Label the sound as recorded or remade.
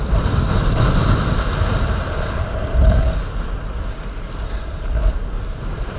recorded